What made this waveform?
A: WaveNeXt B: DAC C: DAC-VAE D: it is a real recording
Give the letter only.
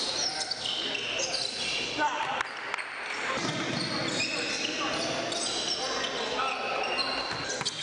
D